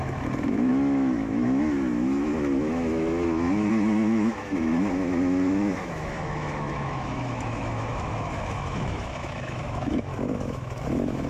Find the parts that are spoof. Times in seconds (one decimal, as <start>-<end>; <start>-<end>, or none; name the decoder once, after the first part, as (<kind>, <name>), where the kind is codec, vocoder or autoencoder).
0.0-11.3 (autoencoder, DAC-VAE)